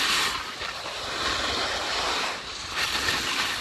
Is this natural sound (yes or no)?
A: yes